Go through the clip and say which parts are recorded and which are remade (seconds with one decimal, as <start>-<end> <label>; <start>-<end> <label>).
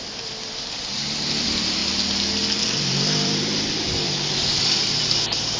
0.0-1.8 remade; 1.8-2.7 recorded; 2.7-5.6 remade